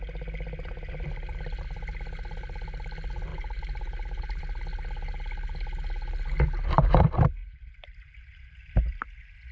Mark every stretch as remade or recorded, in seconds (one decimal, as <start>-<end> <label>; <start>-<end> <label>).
0.0-3.3 recorded; 3.3-4.4 remade; 4.4-7.4 recorded; 7.4-8.7 remade; 8.7-9.5 recorded

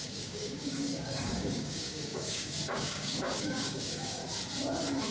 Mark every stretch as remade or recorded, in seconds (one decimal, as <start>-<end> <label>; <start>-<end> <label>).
0.0-4.2 remade; 4.2-5.1 recorded